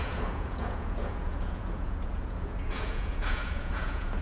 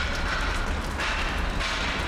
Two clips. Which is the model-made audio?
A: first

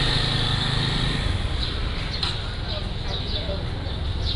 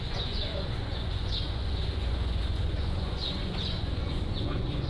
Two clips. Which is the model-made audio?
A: second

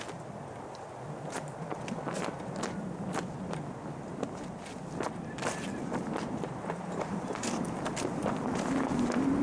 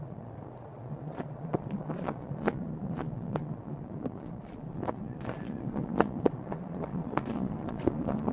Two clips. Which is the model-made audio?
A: second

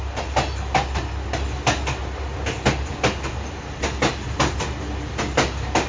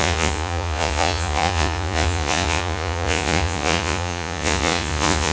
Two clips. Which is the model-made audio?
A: second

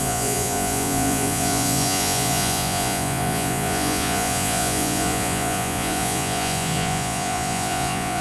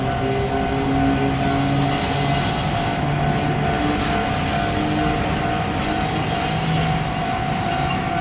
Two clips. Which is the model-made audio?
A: first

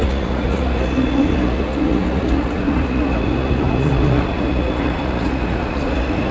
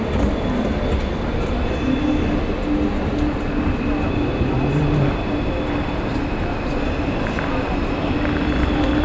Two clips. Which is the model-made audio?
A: first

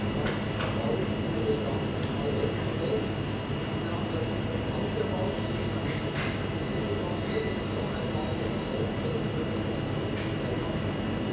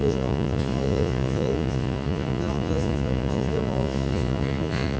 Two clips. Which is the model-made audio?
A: second